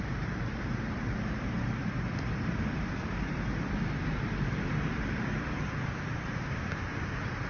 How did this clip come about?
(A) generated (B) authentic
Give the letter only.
A